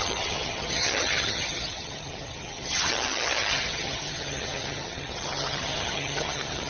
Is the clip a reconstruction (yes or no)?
yes